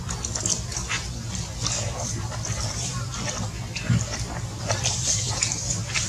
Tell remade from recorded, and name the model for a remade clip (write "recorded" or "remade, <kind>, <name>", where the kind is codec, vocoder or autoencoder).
recorded